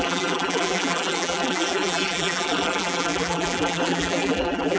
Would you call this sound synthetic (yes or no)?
yes